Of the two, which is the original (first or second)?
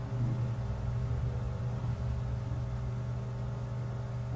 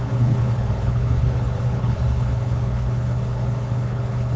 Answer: first